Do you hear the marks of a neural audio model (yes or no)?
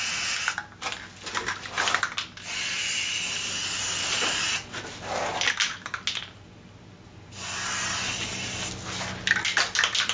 no